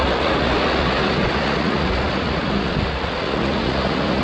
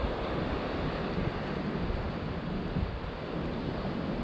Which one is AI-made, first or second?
first